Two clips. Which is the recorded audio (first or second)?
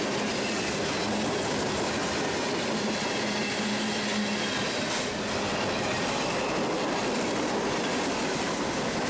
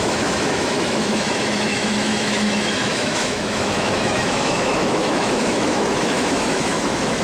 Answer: first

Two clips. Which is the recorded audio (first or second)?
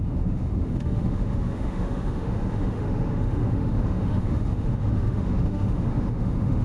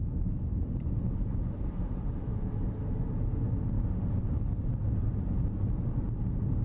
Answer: second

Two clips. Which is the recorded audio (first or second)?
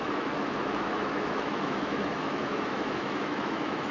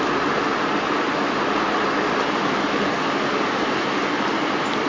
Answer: second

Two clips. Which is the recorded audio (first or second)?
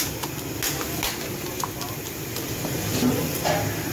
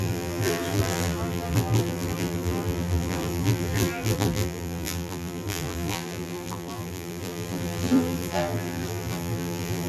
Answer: first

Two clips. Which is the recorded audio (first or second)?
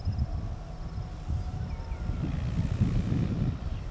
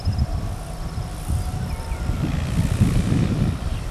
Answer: first